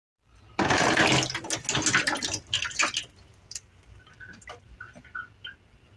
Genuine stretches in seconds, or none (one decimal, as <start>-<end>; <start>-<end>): 0.9-6.0